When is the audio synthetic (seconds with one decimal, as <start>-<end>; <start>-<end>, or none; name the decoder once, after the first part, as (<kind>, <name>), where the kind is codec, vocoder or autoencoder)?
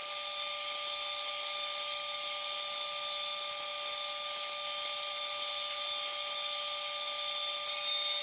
none